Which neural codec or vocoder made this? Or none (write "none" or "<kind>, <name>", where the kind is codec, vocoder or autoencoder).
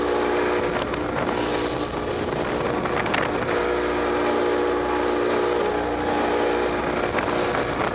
none